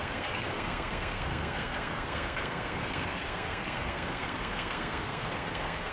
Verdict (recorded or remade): remade